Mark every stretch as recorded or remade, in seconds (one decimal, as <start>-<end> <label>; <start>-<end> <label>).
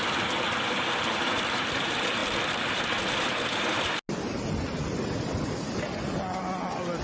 0.0-7.0 recorded